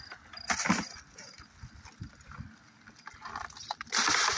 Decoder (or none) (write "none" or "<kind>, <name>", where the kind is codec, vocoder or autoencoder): vocoder, BigVGAN v2